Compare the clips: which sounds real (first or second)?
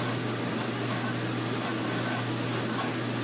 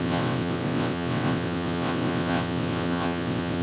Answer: first